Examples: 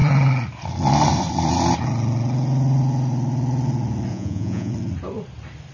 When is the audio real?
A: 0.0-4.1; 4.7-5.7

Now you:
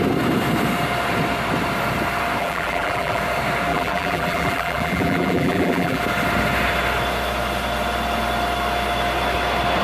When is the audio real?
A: 0.0-2.4; 3.2-3.7; 6.0-9.8

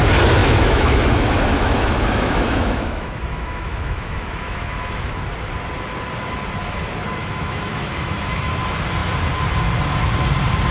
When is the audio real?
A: 0.0-0.4; 5.2-7.2; 8.5-10.7